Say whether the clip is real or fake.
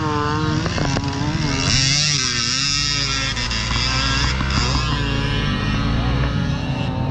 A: real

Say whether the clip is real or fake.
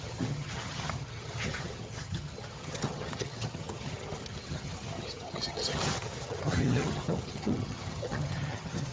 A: fake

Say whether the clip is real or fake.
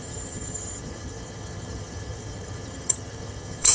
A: fake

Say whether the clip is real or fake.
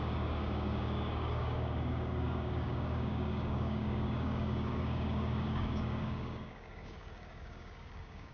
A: fake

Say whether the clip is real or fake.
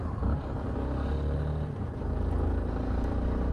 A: real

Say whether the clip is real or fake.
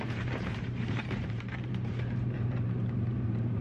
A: fake